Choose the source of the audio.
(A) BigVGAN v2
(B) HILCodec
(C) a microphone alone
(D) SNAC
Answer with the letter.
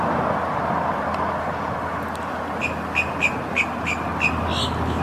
C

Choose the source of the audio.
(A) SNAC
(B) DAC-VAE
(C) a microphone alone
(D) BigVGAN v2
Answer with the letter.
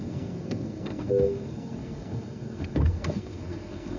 A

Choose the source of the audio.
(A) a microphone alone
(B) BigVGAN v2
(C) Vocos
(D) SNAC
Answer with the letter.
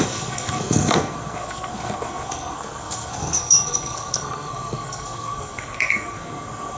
D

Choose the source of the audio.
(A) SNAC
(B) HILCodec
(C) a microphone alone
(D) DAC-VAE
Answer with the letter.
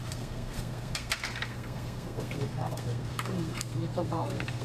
A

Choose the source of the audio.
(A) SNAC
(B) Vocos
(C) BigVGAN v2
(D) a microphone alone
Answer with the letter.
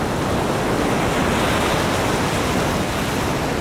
D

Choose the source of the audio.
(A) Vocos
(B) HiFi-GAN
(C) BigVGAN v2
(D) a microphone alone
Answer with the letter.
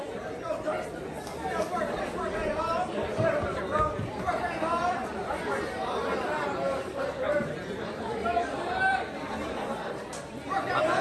C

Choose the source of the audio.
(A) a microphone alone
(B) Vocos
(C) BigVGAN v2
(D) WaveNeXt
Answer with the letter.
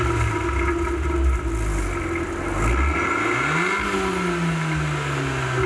A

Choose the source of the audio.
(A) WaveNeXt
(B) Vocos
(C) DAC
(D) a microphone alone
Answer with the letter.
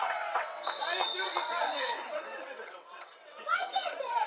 A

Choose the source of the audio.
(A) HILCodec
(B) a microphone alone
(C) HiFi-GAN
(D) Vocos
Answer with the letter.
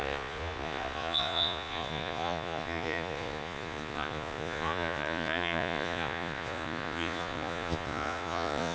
D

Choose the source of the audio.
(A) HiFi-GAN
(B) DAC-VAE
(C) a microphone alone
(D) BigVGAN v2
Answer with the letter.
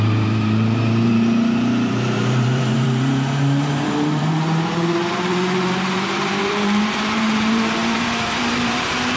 D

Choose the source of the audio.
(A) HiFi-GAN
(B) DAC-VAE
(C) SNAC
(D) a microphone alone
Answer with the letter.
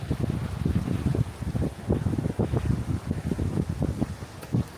D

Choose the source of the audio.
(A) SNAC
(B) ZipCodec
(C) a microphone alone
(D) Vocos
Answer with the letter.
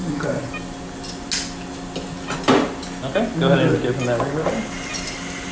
C